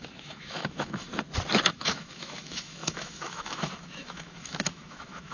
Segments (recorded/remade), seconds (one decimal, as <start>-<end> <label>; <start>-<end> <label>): 0.0-1.1 remade; 1.1-1.7 recorded; 1.7-5.3 remade

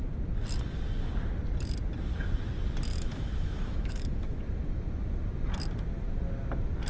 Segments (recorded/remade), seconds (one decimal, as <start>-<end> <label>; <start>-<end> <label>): 0.0-2.9 recorded; 2.9-4.4 remade; 4.4-6.9 recorded